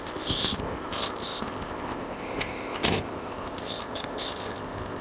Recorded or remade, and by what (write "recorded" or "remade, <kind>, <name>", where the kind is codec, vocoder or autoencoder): remade, codec, ZipCodec